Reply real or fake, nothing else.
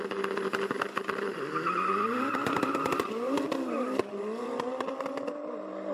fake